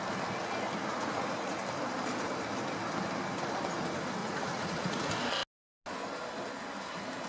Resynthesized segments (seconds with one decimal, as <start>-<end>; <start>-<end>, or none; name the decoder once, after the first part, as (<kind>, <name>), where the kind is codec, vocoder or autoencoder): 0.9-1.6 (vocoder, Vocos); 4.2-5.1